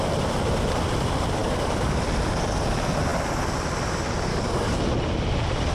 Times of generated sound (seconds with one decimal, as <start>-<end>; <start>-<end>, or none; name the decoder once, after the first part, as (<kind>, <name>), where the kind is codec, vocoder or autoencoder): 1.4-2.0 (codec, DAC); 4.3-4.8